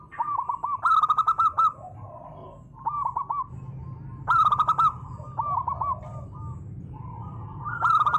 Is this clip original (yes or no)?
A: yes